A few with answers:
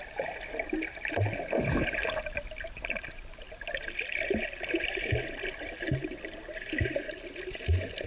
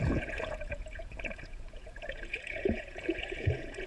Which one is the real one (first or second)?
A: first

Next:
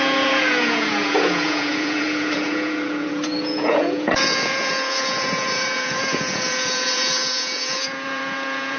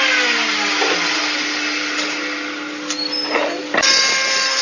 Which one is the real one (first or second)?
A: second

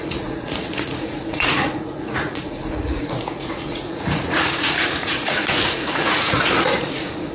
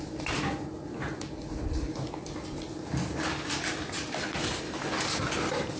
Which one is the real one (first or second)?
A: second